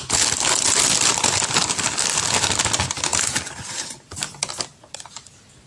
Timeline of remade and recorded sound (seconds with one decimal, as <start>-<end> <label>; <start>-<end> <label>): 0.0-5.7 recorded